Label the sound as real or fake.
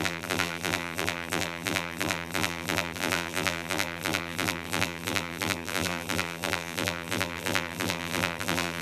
fake